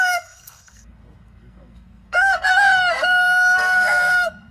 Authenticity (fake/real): fake